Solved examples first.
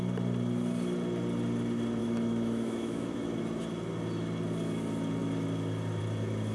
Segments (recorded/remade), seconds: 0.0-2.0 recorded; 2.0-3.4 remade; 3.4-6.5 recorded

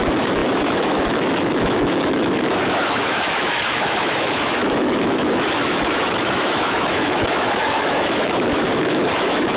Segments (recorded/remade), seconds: 0.0-9.6 remade

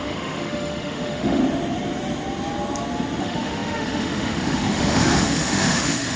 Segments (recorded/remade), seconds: 0.0-1.4 remade; 1.4-3.2 recorded; 3.2-6.2 remade

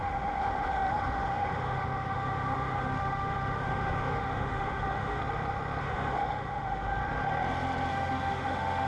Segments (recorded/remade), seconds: 0.0-5.2 remade; 5.2-5.8 recorded; 5.8-7.0 remade; 7.0-7.9 recorded; 7.9-8.9 remade

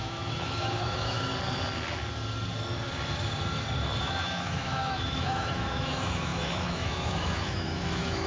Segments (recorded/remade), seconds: 0.0-1.3 remade; 1.3-4.0 recorded; 4.0-8.3 remade

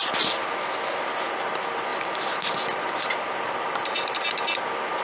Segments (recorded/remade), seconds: 0.0-5.0 recorded

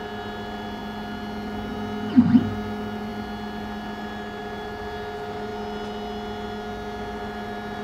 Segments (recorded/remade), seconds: 0.0-7.8 recorded

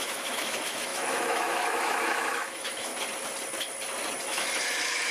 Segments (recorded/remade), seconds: 0.0-2.9 remade; 2.9-4.2 recorded; 4.2-5.1 remade